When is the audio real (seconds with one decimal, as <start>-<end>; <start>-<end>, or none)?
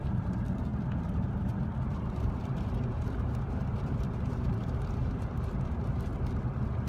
6.1-6.9